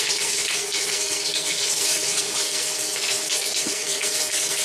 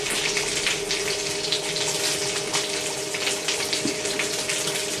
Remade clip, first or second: first